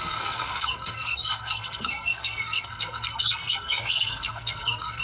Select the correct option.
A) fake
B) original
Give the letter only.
A